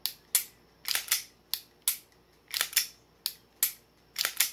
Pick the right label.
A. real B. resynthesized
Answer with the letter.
A